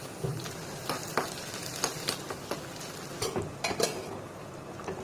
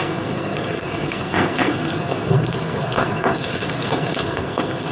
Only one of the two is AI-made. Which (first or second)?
second